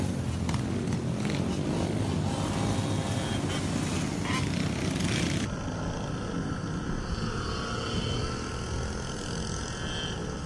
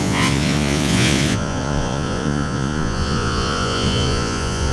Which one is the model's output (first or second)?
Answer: second